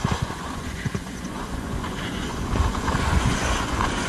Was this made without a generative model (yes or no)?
no